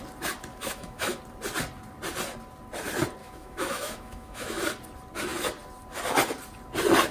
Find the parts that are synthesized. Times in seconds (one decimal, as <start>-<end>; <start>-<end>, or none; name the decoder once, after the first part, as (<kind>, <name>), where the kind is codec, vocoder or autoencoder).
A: 0.5-1.2 (autoencoder, DAC-VAE); 3.2-4.6